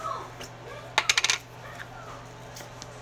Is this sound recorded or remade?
recorded